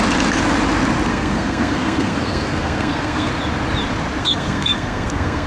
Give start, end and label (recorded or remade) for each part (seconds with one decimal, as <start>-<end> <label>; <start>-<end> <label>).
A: 0.0-1.1 recorded; 1.1-3.3 remade; 3.3-4.2 recorded; 4.2-5.5 remade